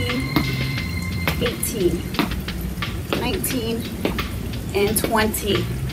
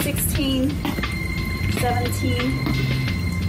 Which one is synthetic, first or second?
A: first